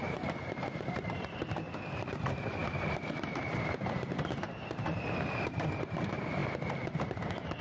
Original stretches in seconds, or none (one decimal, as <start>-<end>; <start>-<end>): none